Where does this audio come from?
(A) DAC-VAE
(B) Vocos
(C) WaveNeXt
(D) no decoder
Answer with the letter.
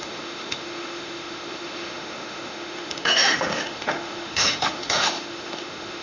A